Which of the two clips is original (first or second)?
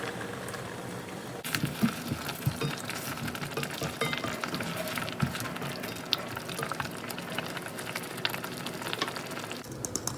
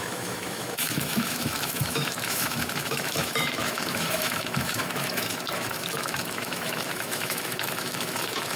first